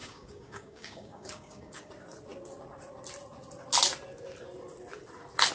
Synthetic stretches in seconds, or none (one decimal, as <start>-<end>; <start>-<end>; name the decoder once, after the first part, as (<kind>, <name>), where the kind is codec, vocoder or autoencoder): 0.0-1.9 (codec, DAC)